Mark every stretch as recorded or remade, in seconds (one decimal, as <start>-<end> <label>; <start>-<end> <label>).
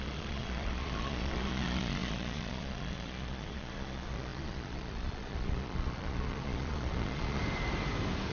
0.0-7.4 remade; 7.4-8.3 recorded